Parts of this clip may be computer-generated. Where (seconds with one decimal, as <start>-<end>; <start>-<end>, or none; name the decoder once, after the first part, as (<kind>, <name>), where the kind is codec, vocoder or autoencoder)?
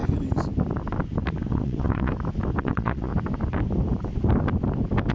1.5-2.1 (vocoder, Vocos); 2.6-3.1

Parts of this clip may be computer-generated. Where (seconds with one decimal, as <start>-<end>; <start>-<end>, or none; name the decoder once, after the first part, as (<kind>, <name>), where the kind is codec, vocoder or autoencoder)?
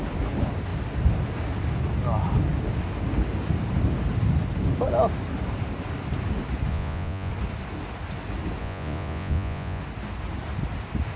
6.7-7.3 (vocoder, Vocos); 8.6-9.8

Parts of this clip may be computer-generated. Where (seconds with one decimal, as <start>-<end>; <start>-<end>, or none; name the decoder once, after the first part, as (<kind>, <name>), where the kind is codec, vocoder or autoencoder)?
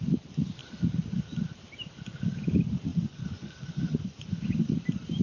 2.9-4.4 (vocoder, Vocos)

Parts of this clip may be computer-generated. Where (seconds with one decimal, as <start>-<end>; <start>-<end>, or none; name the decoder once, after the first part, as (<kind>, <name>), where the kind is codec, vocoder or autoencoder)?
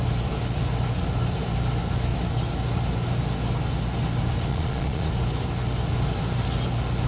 4.5-5.1 (vocoder, Vocos)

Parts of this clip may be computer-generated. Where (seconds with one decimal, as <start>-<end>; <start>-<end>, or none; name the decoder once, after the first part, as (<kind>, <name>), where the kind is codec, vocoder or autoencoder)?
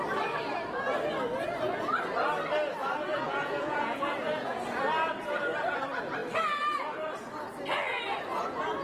3.1-4.8 (vocoder, Vocos)